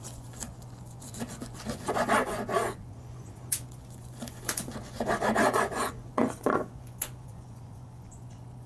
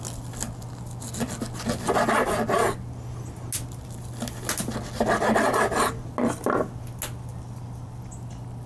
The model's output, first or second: first